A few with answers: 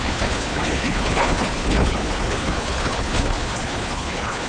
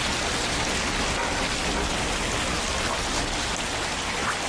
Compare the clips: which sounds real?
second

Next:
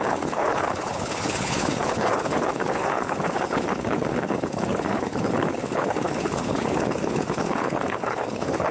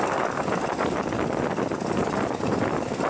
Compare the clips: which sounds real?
second